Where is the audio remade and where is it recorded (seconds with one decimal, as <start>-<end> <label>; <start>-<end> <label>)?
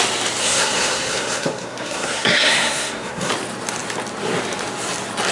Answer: 0.0-0.4 recorded; 0.4-3.3 remade; 3.3-5.3 recorded